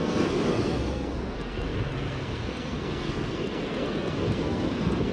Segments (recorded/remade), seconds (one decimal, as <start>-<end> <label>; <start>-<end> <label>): 0.0-5.1 remade